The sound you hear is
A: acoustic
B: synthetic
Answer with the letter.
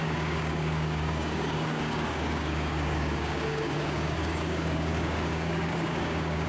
B